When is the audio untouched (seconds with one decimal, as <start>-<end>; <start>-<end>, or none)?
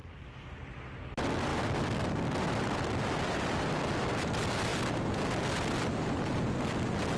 0.0-7.2